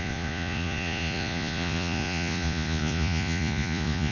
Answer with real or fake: fake